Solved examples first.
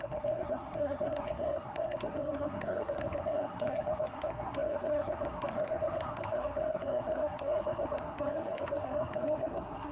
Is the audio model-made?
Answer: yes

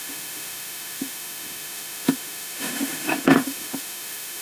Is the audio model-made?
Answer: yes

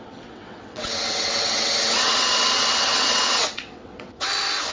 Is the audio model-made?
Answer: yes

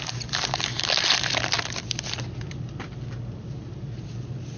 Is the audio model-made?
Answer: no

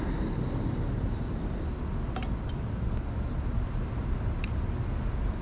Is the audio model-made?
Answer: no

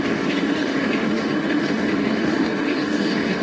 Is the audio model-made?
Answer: yes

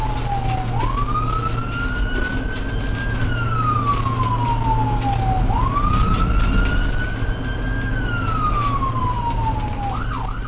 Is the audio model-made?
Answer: no